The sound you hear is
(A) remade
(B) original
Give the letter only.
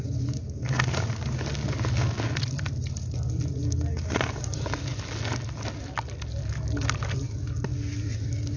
B